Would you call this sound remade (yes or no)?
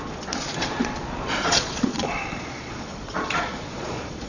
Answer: yes